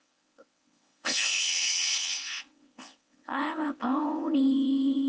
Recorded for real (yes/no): no